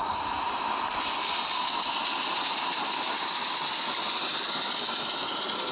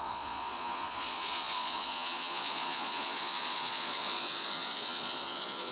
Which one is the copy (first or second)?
second